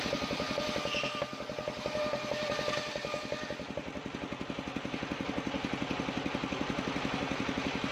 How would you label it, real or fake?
real